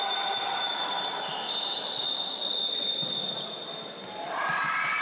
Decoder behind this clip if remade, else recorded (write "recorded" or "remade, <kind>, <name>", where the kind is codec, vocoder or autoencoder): recorded